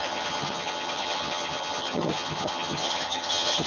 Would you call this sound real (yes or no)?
no